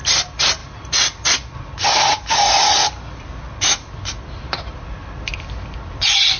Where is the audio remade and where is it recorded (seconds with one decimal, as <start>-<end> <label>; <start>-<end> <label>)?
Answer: 0.0-6.4 recorded